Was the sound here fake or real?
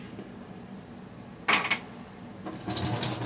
real